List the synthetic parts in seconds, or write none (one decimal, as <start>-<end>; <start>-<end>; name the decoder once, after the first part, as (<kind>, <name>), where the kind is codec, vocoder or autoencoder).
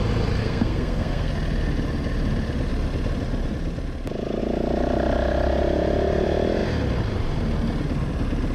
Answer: 0.4-1.3 (codec, SNAC)